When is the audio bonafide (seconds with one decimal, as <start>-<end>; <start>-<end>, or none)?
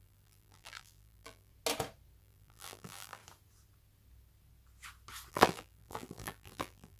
1.5-2.2; 3.2-5.3